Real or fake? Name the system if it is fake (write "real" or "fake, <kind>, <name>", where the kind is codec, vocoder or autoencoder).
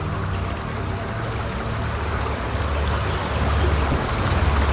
real